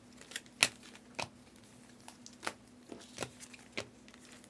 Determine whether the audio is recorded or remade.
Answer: recorded